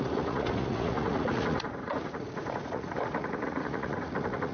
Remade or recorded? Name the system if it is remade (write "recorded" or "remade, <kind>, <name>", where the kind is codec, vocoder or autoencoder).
remade, vocoder, Vocos